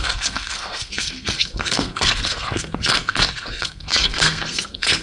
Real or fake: fake